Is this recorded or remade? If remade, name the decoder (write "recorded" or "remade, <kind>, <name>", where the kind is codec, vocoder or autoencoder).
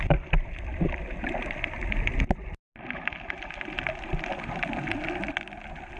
recorded